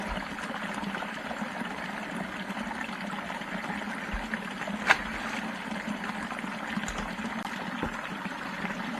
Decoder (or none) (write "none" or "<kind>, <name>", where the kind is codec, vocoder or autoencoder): none